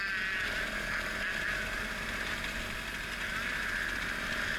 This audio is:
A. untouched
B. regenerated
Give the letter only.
A